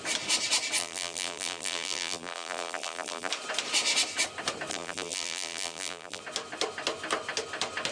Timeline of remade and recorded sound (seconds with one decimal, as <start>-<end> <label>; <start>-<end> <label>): 0.0-0.8 recorded; 0.8-3.3 remade; 3.3-4.7 recorded; 4.7-6.2 remade; 6.2-7.9 recorded